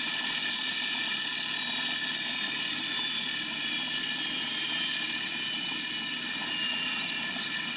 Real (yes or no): yes